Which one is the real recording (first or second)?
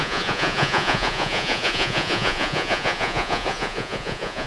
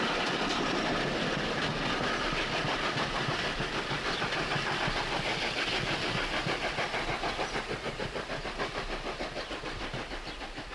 second